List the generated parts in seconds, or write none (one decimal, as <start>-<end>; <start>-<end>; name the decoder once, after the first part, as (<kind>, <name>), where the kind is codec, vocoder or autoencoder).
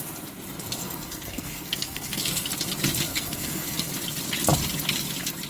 0.8-2.5 (codec, SNAC); 3.1-3.9